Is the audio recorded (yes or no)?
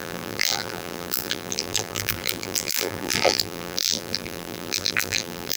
no